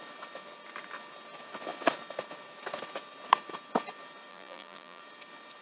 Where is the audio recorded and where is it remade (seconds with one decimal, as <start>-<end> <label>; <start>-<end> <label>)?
0.0-4.3 recorded; 4.3-5.0 remade; 5.0-5.6 recorded